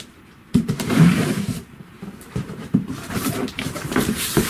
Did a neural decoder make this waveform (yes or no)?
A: yes